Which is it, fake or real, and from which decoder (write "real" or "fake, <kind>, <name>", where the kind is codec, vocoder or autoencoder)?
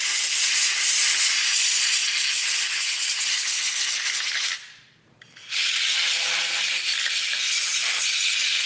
fake, vocoder, BigVGAN v2